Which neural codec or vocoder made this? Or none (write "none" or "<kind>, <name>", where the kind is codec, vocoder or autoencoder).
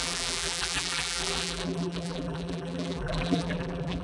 vocoder, BigVGAN v2